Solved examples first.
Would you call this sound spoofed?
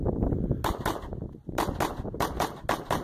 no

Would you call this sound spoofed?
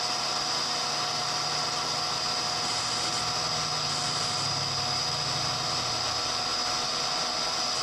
no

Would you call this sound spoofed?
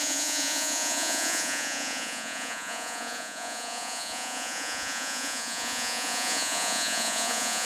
yes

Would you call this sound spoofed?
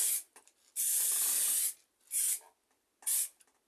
no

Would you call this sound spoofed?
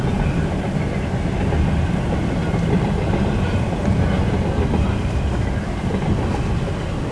no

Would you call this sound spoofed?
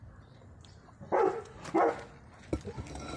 no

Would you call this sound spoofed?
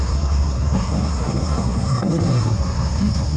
yes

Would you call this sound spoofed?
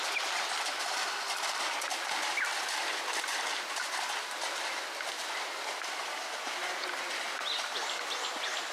no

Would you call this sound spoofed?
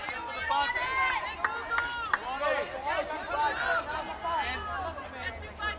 no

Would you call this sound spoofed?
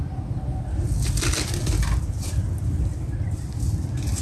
no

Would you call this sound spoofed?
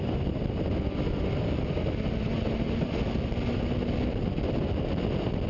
no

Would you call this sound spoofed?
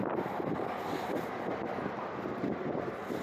no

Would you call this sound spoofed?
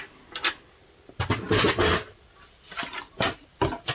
no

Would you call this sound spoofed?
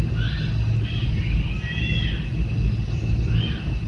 no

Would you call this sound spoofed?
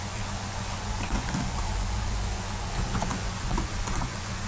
yes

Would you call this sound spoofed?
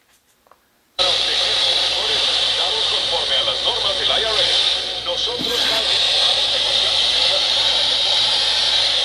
yes